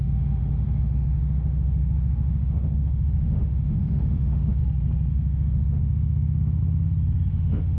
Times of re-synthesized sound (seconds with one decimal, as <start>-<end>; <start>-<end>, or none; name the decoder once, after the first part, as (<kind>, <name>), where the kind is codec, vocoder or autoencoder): 0.0-4.6 (autoencoder, DAC-VAE); 5.1-6.6; 7.3-7.8